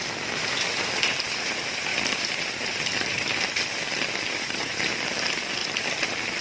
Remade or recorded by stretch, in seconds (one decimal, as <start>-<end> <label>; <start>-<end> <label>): 0.0-1.9 recorded; 1.9-2.4 remade; 2.4-2.9 recorded; 2.9-4.7 remade; 4.7-5.6 recorded; 5.6-6.4 remade